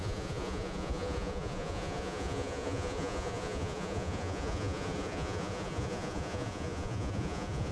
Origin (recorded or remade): remade